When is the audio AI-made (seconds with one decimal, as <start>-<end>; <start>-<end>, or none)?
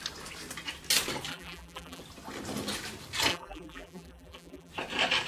1.3-2.0; 3.3-4.7